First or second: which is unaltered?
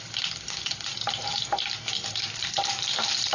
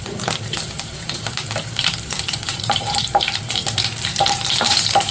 first